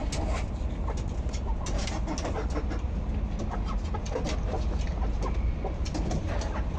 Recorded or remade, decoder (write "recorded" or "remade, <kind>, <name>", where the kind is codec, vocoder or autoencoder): recorded